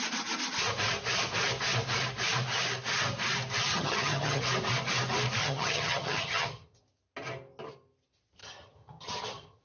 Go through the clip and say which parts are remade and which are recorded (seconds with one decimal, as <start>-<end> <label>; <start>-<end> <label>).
0.0-3.7 recorded; 3.7-4.4 remade; 4.4-5.4 recorded; 5.4-6.8 remade; 6.8-8.4 recorded; 8.4-9.6 remade